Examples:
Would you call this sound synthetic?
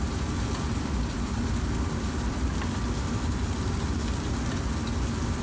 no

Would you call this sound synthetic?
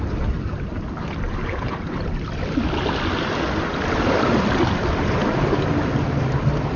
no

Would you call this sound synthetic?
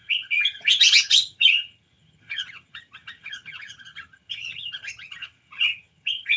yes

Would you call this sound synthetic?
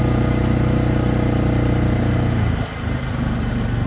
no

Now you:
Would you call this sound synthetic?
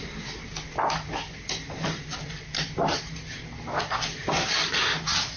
no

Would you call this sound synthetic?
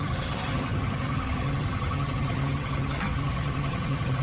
yes